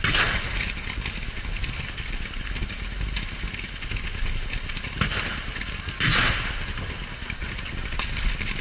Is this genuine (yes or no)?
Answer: yes